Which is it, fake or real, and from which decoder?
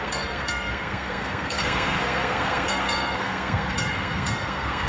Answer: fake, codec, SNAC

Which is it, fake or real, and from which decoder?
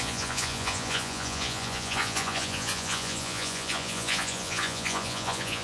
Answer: fake, vocoder, Vocos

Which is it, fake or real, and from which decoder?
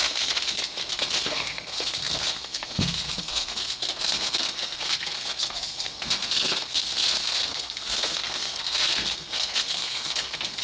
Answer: fake, codec, SNAC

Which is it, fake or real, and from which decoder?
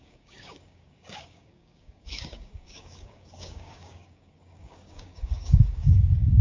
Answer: fake, codec, DAC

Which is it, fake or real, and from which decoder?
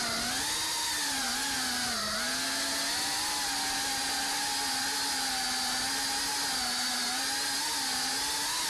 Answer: real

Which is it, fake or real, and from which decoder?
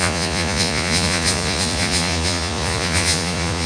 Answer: fake, vocoder, Vocos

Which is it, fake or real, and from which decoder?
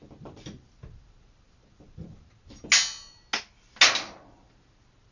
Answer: real